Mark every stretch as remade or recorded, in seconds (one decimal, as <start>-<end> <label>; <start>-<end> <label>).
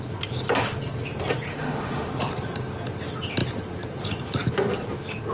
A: 0.0-1.5 recorded; 1.5-2.1 remade; 2.1-5.3 recorded